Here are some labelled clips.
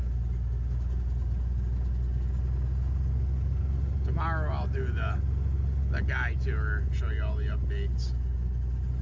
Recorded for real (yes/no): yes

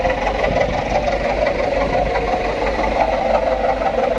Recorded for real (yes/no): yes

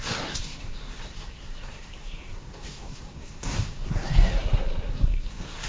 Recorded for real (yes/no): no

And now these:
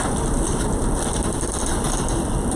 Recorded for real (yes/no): yes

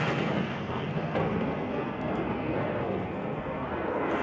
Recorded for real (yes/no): no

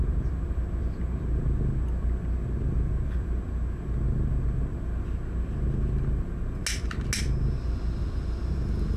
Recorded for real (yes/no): yes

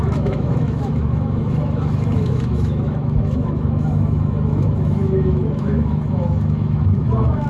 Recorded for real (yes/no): no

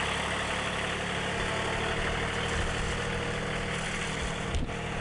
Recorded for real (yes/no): yes